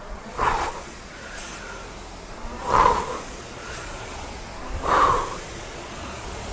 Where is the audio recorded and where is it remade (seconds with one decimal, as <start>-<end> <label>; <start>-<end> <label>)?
0.0-1.5 remade; 1.5-2.6 recorded; 2.6-4.5 remade; 4.5-5.4 recorded; 5.4-6.5 remade